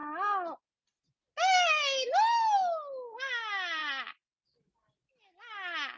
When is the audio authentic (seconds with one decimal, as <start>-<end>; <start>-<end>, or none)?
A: 0.0-6.0